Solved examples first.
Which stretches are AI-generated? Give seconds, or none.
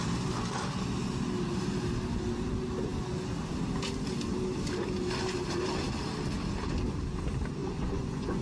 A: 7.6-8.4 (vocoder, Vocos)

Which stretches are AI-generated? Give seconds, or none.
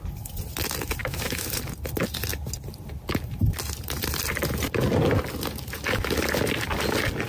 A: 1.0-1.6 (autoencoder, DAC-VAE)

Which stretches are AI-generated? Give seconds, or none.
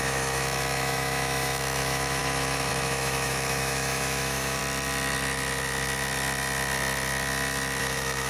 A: 0.0-4.6 (autoencoder, DAC-VAE); 7.8-8.3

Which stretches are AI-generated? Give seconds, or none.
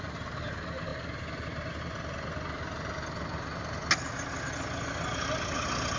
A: none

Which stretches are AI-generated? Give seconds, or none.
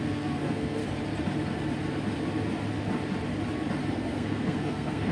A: 0.0-0.8 (codec, SNAC); 3.9-5.1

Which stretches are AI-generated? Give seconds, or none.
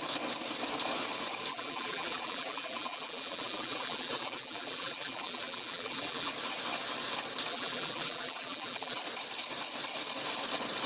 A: 1.5-6.3 (vocoder, BigVGAN v2); 7.5-9.0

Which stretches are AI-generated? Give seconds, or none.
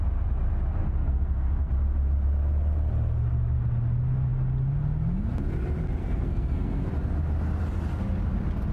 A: 0.8-1.7 (codec, SNAC); 6.0-6.9